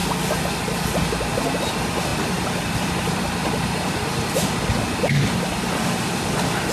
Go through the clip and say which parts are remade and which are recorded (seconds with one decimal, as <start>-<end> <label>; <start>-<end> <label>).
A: 0.0-2.1 recorded; 2.1-4.2 remade; 4.2-6.7 recorded

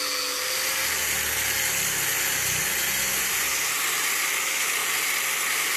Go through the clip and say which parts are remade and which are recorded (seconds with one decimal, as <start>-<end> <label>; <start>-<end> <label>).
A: 0.0-3.5 recorded; 3.5-4.3 remade; 4.3-5.8 recorded

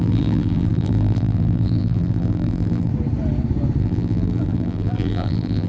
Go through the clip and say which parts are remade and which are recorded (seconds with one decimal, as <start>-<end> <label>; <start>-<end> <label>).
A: 0.0-2.9 remade; 2.9-3.8 recorded; 3.8-5.7 remade

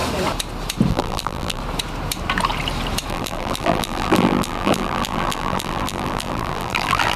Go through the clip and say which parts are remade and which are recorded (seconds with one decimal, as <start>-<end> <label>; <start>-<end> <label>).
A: 0.0-0.9 recorded; 0.9-1.6 remade; 1.6-3.1 recorded; 3.1-7.2 remade

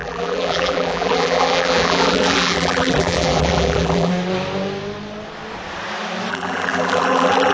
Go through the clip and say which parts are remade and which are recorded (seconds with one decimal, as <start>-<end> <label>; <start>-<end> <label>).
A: 0.0-4.1 remade; 4.1-6.3 recorded; 6.3-7.5 remade

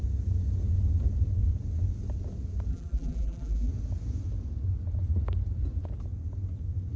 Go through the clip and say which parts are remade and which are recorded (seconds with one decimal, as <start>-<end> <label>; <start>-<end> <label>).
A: 0.0-2.7 recorded; 2.7-3.7 remade; 3.7-7.0 recorded